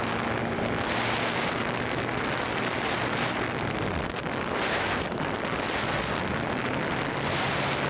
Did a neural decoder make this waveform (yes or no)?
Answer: no